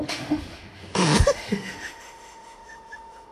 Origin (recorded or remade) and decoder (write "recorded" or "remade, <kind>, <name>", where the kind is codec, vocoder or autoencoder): remade, autoencoder, DAC-VAE